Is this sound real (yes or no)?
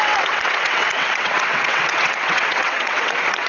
no